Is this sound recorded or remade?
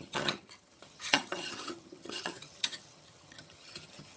remade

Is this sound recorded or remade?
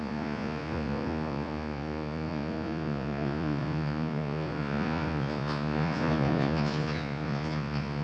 remade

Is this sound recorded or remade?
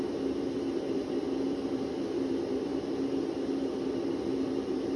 recorded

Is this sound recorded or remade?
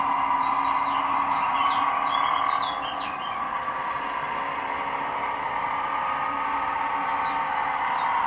recorded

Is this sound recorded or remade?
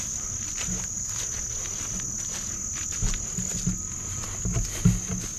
recorded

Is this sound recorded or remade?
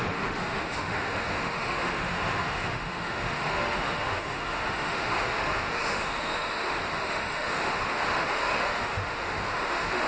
remade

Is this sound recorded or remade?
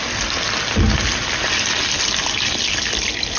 recorded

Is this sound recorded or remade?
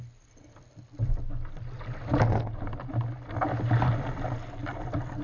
recorded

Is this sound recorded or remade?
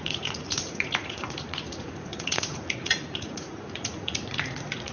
remade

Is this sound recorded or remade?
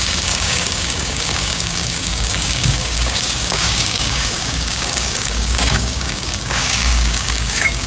remade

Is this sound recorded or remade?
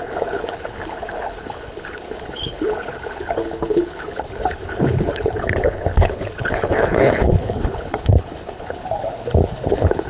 remade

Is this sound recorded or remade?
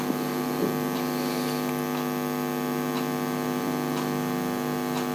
recorded